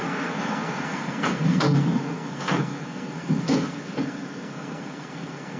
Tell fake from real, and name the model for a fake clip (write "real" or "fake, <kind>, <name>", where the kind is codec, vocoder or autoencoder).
fake, codec, SNAC